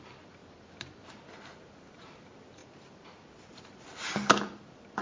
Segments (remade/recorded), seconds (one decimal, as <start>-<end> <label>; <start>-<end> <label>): 0.0-5.0 recorded